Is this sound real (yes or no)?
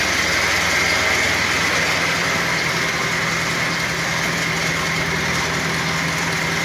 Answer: yes